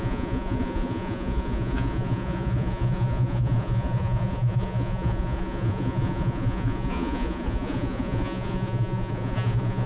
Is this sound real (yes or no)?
no